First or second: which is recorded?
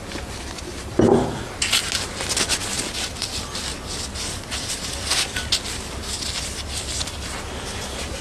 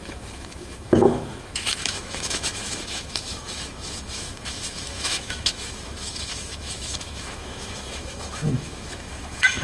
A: first